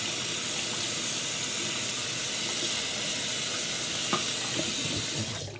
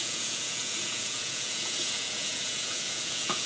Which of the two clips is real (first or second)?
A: first